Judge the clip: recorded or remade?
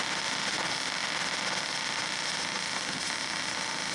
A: recorded